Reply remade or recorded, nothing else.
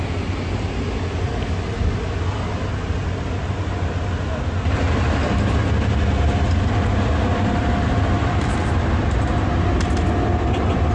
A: recorded